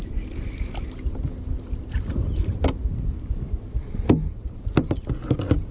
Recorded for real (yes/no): yes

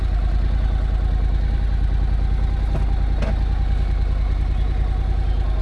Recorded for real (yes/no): yes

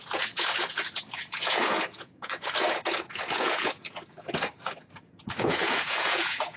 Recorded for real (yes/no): no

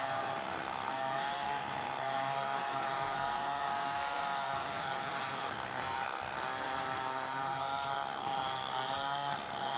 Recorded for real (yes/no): no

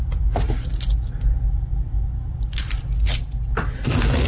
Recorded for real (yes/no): yes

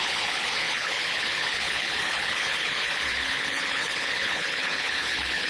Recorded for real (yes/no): no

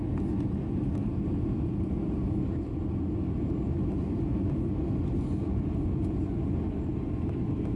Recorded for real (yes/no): yes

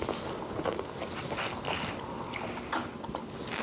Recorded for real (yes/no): yes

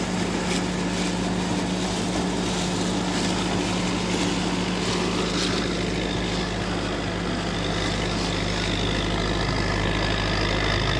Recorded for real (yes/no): yes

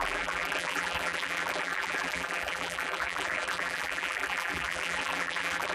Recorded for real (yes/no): no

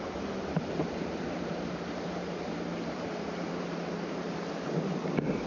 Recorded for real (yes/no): no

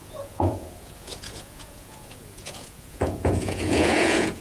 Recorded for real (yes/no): no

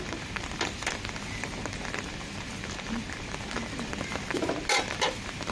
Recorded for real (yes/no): yes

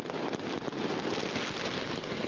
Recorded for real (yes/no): yes